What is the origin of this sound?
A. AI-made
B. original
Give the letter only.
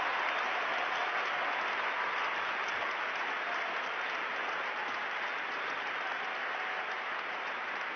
B